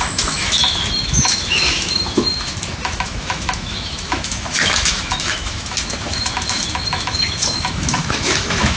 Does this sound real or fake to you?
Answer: fake